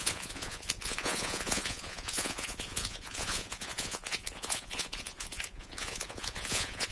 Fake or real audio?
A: fake